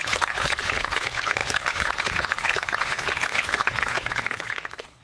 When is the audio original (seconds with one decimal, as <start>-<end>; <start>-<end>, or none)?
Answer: none